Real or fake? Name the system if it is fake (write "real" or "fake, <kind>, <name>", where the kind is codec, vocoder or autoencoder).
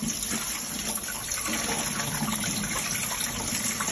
fake, vocoder, BigVGAN v2